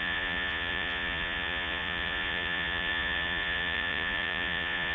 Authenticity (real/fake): fake